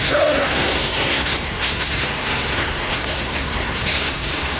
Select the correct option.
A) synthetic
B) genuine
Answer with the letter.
A